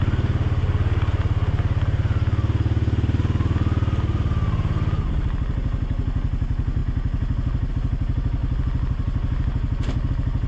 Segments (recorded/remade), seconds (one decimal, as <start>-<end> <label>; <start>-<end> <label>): 0.0-10.5 recorded